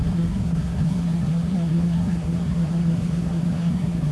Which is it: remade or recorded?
remade